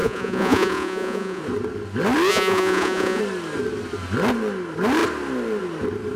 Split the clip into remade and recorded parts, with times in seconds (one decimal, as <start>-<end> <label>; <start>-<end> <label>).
0.0-1.4 remade; 1.4-2.3 recorded; 2.3-3.2 remade; 3.2-6.2 recorded